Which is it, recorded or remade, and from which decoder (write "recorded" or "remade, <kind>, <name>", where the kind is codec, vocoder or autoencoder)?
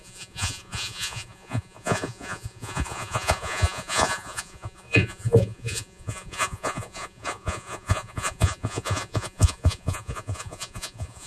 remade, vocoder, Vocos